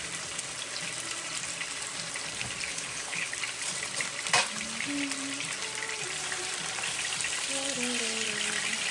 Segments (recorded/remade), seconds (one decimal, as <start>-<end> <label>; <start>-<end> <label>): 0.0-2.7 recorded; 2.7-3.3 remade; 3.3-8.9 recorded